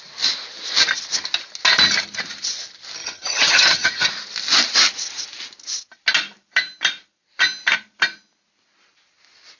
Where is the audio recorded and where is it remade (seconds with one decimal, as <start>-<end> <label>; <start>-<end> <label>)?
0.0-3.0 recorded; 3.0-4.1 remade; 4.1-9.6 recorded